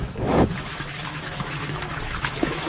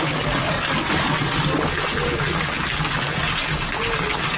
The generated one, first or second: first